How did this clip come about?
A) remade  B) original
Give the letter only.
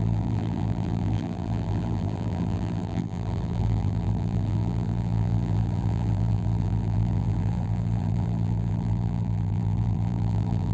A